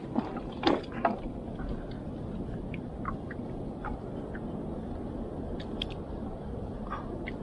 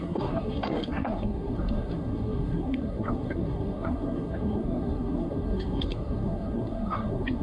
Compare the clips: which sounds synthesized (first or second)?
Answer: second